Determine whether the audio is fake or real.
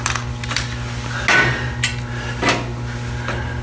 real